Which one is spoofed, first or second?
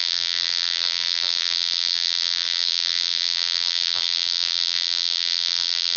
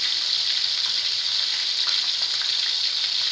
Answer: first